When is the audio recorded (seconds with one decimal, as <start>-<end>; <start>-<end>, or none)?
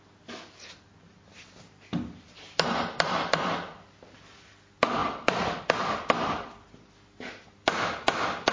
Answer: 0.0-5.0; 5.6-8.5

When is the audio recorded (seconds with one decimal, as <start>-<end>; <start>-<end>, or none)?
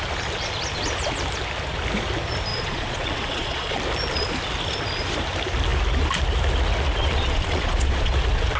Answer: 0.0-2.5; 3.8-7.0; 8.1-8.6